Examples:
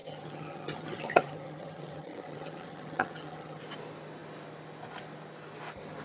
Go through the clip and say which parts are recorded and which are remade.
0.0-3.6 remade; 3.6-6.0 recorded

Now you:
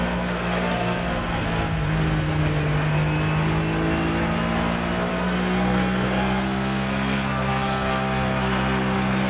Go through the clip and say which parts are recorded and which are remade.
0.0-2.4 remade; 2.4-5.1 recorded; 5.1-9.3 remade